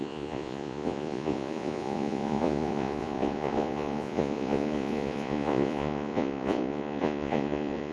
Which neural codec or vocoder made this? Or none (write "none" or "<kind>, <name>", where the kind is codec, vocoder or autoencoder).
vocoder, Vocos